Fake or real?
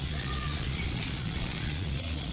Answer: fake